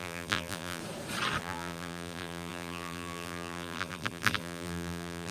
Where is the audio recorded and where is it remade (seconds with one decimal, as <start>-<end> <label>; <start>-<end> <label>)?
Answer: 0.0-0.8 remade; 0.8-1.4 recorded; 1.4-5.3 remade